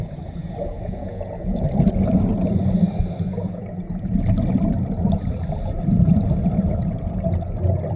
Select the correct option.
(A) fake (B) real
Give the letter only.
B